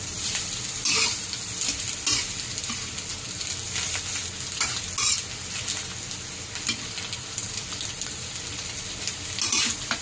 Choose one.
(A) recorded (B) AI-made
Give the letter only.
A